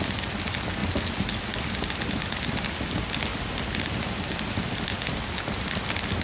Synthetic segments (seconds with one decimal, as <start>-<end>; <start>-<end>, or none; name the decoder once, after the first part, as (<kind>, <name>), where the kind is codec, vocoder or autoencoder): none